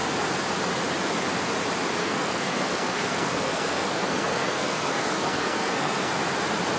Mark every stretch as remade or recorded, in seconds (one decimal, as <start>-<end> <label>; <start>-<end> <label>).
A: 0.0-2.0 recorded; 2.0-6.1 remade; 6.1-6.8 recorded